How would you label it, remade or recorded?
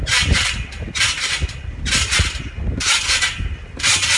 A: recorded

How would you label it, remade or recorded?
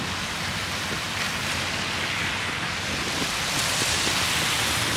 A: recorded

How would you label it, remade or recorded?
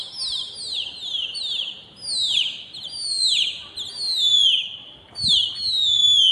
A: recorded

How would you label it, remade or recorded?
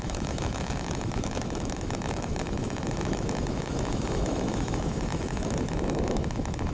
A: remade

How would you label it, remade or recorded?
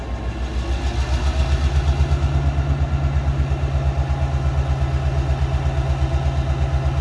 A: recorded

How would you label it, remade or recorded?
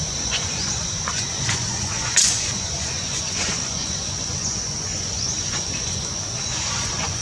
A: remade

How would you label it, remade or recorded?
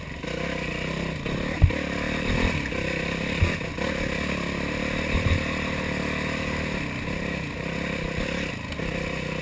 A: recorded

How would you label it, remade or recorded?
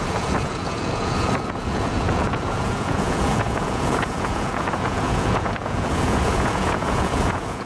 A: remade